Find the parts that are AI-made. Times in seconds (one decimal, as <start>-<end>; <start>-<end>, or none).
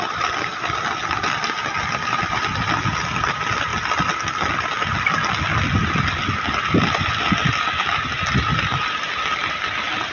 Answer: none